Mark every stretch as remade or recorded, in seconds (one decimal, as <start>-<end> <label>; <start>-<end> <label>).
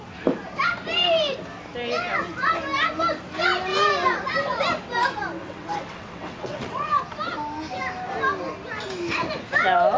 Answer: 0.0-5.4 recorded; 5.4-6.9 remade; 6.9-10.0 recorded